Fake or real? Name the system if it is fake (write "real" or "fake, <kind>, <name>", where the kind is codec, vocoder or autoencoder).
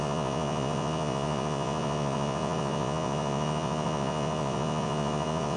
fake, vocoder, Vocos